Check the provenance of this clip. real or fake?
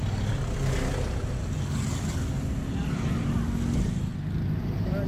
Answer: real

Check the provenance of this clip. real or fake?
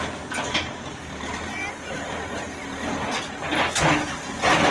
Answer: real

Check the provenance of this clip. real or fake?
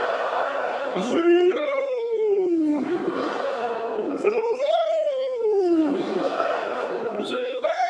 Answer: fake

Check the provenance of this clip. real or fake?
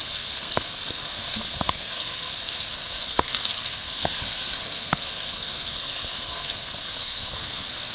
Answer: fake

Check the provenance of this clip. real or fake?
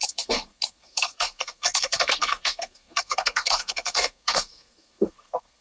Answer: fake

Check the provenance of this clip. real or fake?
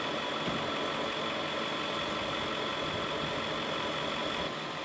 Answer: real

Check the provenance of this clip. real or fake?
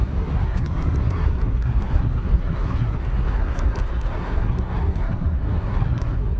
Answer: fake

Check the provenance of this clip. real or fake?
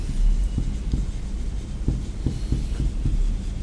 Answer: real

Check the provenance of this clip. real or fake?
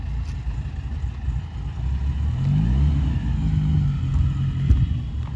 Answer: real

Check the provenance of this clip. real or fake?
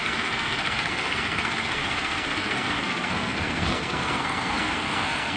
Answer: fake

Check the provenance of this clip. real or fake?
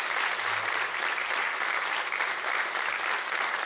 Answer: real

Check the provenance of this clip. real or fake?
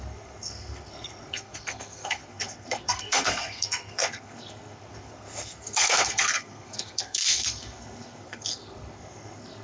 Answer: fake